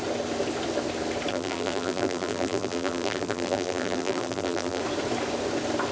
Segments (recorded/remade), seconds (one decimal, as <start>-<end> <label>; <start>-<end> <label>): 0.0-1.3 recorded; 1.3-4.8 remade; 4.8-5.9 recorded